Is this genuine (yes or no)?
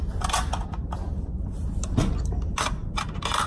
yes